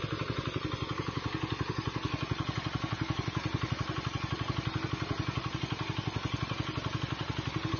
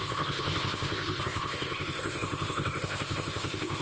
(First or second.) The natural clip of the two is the first